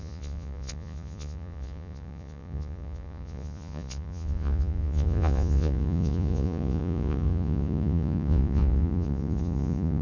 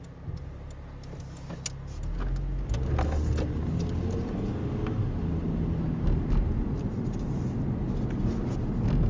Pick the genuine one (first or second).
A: second